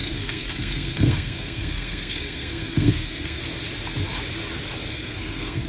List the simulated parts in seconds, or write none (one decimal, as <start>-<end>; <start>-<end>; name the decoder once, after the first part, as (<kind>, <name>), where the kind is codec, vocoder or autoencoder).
0.0-3.4 (codec, SNAC); 4.9-5.7